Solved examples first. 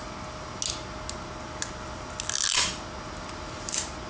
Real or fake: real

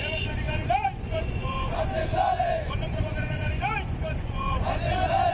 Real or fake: fake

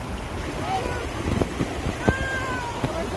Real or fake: fake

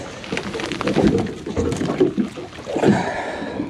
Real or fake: real